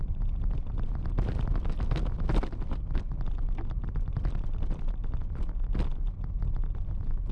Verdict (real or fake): real